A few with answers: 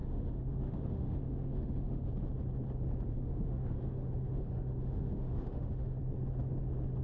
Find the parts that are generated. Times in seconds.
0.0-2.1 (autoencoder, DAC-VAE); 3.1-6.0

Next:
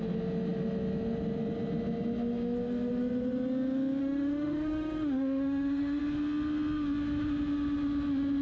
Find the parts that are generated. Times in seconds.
4.0-6.0 (autoencoder, DAC-VAE)

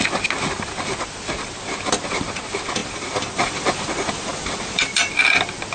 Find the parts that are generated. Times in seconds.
2.8-5.1 (vocoder, BigVGAN v2)

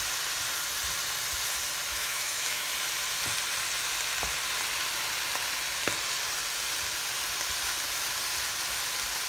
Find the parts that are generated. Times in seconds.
1.9-2.7 (autoencoder, DAC-VAE)